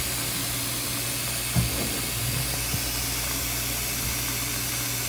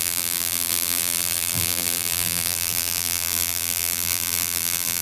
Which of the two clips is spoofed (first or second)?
second